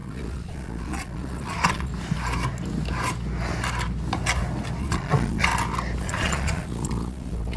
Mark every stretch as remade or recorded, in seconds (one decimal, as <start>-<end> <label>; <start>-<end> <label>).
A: 0.0-1.9 remade; 1.9-4.8 recorded; 4.8-5.5 remade; 5.5-6.0 recorded; 6.0-7.6 remade